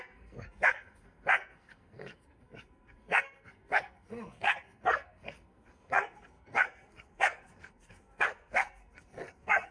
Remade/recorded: remade